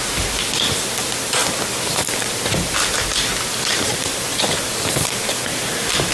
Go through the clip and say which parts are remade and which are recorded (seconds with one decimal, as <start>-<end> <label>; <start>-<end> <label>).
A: 0.0-6.1 recorded